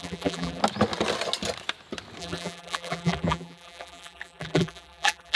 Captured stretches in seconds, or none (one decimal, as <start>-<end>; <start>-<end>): 0.6-2.2